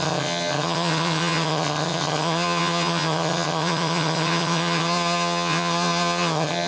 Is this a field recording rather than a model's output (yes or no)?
no